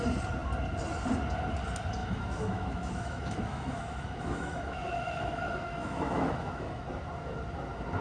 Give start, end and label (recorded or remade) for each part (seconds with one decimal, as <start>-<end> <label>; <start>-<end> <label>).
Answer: 0.0-2.0 recorded; 2.0-6.8 remade; 6.8-8.0 recorded